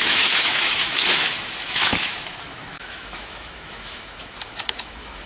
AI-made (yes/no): yes